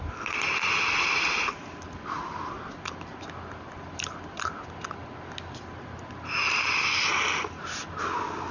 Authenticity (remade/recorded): recorded